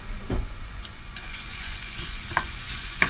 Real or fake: fake